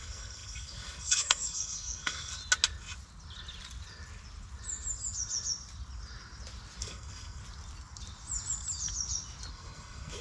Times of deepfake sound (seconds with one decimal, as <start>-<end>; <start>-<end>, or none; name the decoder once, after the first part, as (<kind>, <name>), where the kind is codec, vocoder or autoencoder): 0.0-2.4 (codec, SNAC); 6.8-7.4; 9.5-10.2